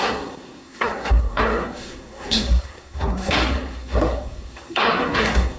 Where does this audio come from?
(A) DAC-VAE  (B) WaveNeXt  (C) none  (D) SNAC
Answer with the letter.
D